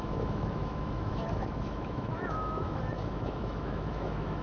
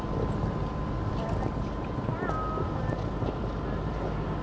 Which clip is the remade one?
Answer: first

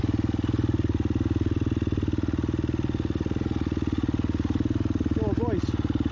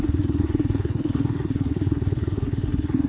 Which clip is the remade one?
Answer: second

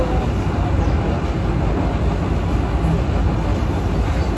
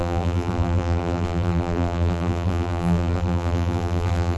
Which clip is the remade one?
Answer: second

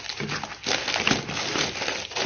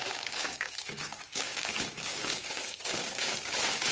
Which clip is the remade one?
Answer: second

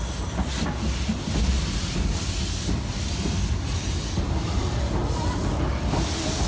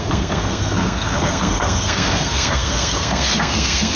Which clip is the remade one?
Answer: second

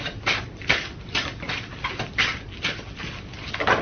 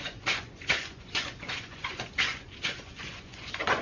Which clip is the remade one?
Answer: second